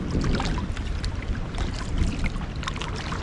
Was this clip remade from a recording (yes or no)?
no